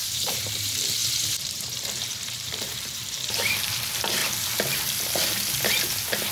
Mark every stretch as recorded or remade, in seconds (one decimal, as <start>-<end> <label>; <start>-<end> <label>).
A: 0.0-4.2 remade; 4.2-6.3 recorded